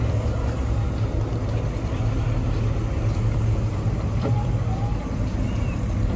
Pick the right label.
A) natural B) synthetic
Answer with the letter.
A